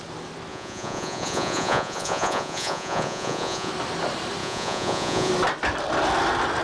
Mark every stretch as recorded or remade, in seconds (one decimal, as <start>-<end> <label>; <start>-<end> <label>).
0.0-0.5 recorded; 0.5-3.7 remade; 3.7-4.4 recorded; 4.4-5.3 remade; 5.3-6.6 recorded